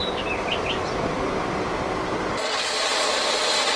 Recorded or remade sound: recorded